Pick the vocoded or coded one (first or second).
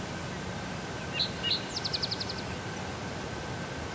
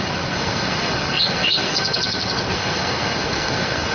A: second